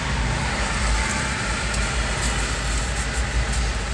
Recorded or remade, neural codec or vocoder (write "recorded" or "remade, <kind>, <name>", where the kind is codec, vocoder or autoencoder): recorded